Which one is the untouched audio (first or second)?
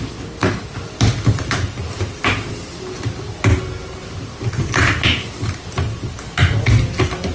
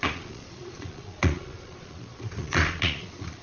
first